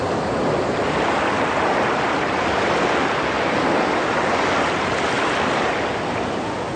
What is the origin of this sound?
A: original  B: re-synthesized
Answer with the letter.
A